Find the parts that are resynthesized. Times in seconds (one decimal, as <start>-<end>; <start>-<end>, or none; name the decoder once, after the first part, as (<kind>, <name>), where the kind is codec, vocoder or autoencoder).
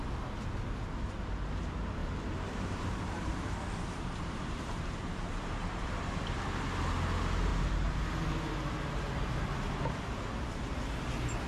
2.0-6.7 (vocoder, BigVGAN v2); 7.5-8.1